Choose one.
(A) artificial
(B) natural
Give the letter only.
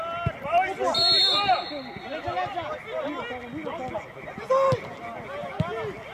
B